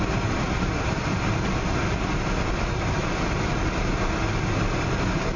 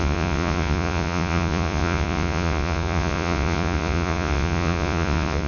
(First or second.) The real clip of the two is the first